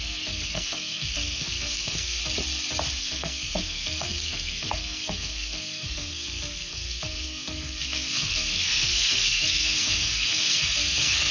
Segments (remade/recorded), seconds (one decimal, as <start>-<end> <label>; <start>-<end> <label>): 0.0-2.2 remade; 2.2-3.0 recorded; 3.0-11.3 remade